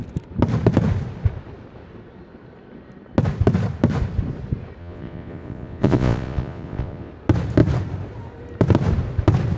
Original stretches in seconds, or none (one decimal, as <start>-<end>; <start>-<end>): 0.0-4.8; 7.1-9.6